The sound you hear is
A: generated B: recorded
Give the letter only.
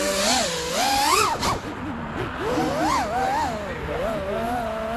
B